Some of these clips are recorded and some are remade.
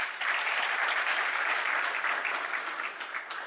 recorded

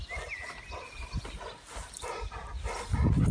recorded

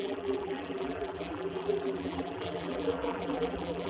remade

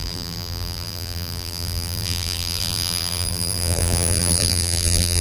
remade